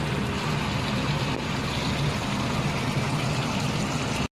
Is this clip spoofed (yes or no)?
no